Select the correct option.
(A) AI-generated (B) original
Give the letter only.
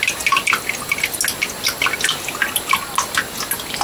B